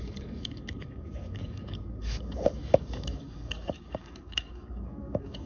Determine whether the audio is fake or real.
fake